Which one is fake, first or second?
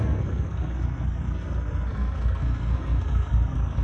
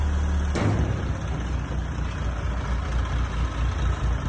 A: first